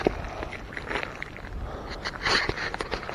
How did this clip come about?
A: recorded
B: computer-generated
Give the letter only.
A